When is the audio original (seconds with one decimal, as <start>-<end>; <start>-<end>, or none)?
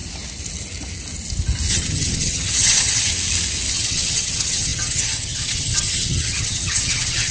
0.0-1.7; 3.1-3.7